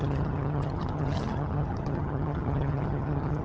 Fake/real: fake